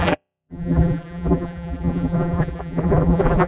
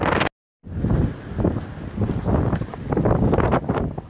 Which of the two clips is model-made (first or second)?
first